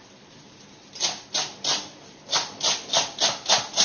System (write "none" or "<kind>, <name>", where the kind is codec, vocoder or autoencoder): none